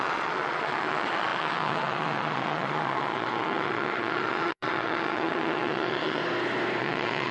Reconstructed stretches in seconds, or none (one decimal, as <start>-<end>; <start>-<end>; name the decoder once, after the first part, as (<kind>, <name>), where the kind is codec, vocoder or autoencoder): 0.0-6.2 (vocoder, Vocos); 6.8-7.3